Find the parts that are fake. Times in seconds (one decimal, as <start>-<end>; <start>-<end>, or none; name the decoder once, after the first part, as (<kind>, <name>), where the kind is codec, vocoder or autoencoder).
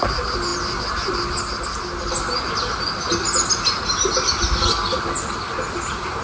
none